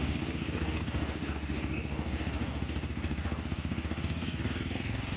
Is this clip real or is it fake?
fake